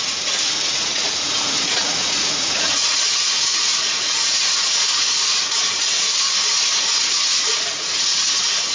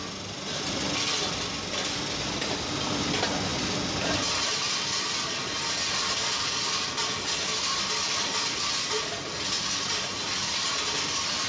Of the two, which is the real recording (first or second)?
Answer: second